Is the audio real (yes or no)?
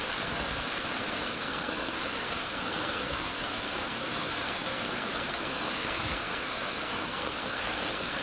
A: no